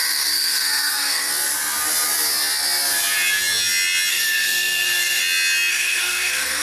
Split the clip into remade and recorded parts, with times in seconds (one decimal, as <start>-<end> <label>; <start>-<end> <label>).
0.0-1.3 remade; 1.3-4.1 recorded; 4.1-5.2 remade; 5.2-5.7 recorded; 5.7-6.6 remade